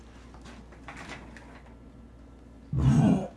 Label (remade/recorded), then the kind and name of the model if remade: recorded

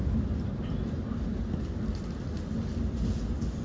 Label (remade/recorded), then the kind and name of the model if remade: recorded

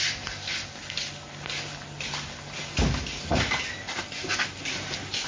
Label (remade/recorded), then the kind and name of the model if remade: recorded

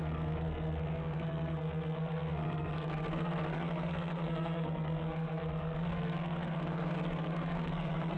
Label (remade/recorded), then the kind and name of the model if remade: remade, codec, SNAC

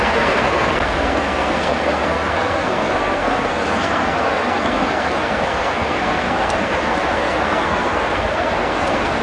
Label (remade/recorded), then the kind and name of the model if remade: remade, codec, SNAC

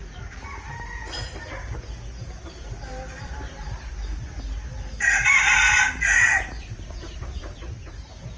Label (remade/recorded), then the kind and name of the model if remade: remade, vocoder, BigVGAN v2